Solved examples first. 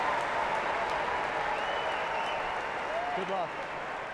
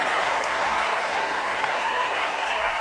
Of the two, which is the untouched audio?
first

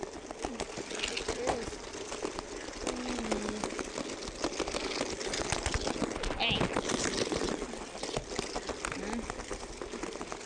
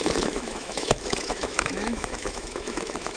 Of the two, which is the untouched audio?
first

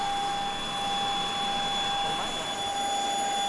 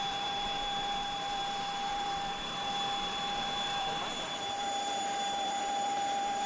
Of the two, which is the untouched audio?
first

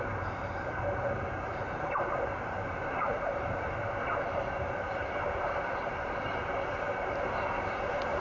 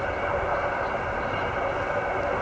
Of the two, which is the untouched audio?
second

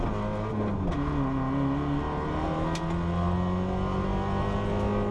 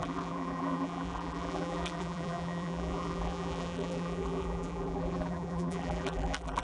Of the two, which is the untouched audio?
first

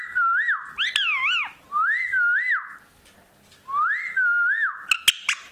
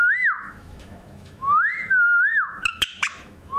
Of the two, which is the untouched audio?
first